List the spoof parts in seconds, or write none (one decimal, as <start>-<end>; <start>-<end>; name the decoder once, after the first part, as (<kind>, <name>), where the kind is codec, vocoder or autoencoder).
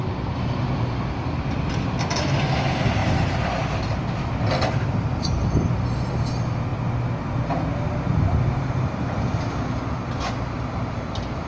none